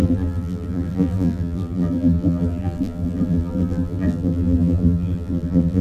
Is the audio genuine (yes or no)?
no